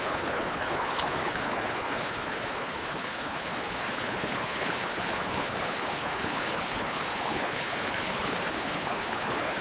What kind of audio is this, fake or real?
fake